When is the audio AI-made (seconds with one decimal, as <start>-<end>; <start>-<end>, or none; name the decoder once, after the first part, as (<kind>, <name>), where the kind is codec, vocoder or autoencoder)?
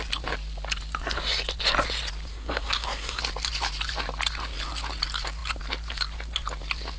2.3-3.2 (codec, SNAC)